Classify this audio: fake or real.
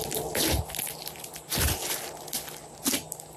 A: real